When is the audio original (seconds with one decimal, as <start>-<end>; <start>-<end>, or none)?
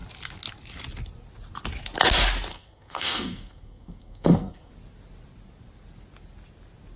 0.0-2.5; 4.7-7.0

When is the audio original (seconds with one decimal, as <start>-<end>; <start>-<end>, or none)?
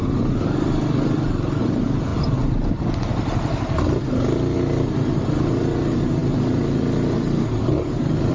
0.0-8.3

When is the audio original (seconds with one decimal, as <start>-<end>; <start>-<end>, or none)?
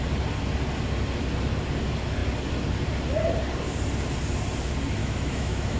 0.0-5.0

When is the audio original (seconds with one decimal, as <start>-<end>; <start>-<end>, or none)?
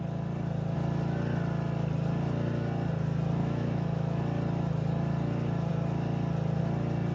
0.0-3.4; 4.2-7.1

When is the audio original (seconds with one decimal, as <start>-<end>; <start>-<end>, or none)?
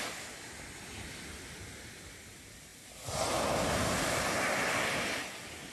0.0-5.7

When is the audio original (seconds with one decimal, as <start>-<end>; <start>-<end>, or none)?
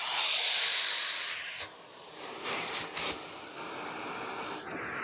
0.0-5.0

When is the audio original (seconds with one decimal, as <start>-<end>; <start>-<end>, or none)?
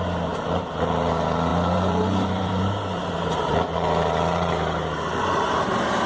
none